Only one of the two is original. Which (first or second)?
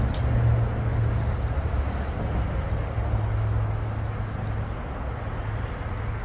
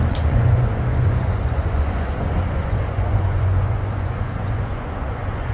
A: first